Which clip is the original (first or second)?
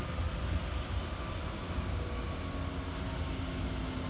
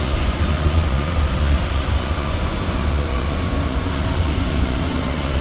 first